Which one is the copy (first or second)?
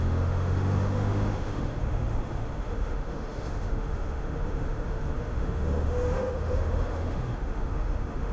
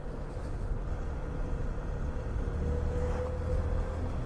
first